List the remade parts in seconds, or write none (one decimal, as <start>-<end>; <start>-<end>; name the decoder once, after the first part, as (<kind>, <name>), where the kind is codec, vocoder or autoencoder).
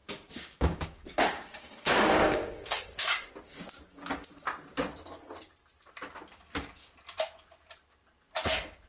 0.0-3.3 (codec, DAC)